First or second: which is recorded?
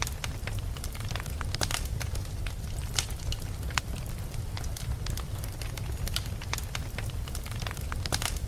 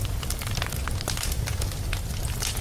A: second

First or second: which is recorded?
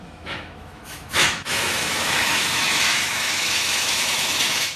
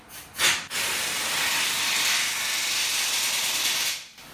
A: second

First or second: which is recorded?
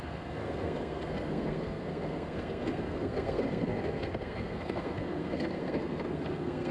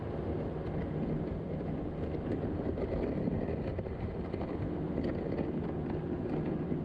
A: second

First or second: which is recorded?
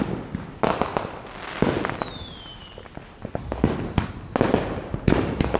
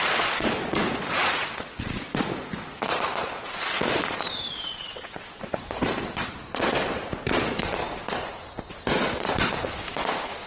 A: first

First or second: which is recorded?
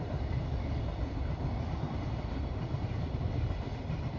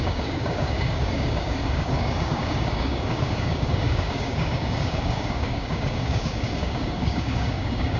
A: first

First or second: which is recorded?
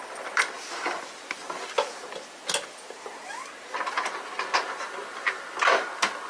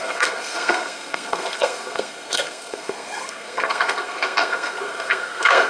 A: first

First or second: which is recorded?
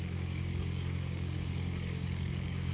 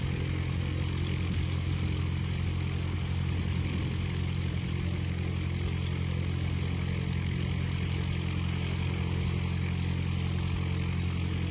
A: second